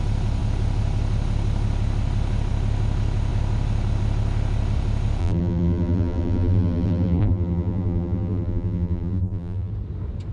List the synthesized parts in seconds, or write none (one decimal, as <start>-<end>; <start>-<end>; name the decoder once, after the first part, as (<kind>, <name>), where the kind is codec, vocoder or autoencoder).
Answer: 5.2-9.7 (vocoder, BigVGAN v2)